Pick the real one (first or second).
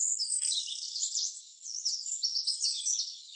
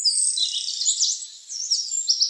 second